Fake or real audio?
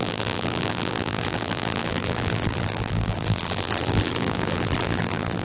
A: fake